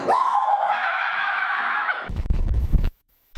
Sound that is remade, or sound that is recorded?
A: remade